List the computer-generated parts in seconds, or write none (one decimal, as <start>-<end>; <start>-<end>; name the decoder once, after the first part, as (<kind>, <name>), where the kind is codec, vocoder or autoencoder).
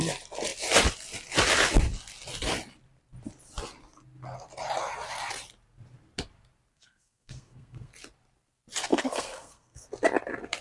6.7-7.9 (codec, SNAC); 8.9-9.9